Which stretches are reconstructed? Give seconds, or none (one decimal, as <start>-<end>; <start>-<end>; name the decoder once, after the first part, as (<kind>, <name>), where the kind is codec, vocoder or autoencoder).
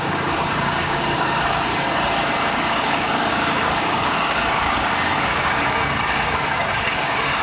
0.0-1.7 (codec, DAC); 2.5-7.4